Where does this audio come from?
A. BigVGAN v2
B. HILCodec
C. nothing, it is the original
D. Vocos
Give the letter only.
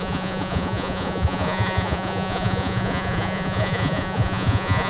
D